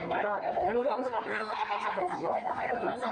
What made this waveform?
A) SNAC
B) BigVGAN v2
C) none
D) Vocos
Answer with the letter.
A